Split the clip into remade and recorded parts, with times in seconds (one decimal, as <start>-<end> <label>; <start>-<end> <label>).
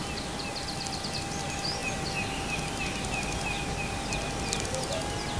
0.0-5.4 recorded